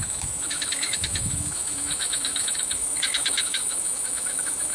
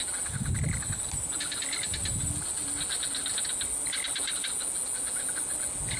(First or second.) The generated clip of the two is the first